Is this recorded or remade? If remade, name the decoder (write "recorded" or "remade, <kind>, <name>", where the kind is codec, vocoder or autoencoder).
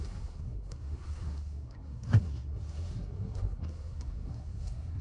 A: remade, codec, SNAC